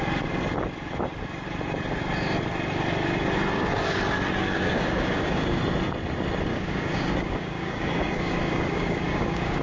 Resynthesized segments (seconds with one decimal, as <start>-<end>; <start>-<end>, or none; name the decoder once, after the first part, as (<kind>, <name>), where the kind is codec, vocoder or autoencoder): 4.4-5.6 (codec, DAC); 6.5-9.6